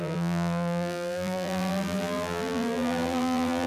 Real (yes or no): no